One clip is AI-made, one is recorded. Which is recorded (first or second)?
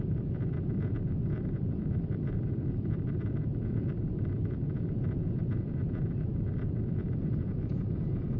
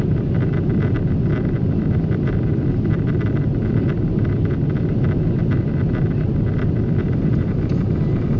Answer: second